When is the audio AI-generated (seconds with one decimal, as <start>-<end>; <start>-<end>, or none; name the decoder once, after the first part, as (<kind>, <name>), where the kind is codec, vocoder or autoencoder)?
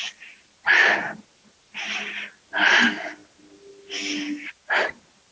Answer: none